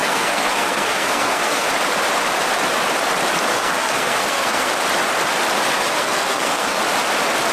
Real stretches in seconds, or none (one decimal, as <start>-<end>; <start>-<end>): 1.7-3.5; 4.7-5.7; 6.8-7.5